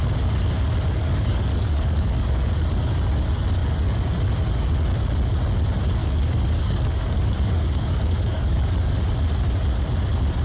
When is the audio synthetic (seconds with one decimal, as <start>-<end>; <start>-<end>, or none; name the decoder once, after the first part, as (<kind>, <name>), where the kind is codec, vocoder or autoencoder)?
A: 1.0-2.4 (codec, DAC); 6.0-9.0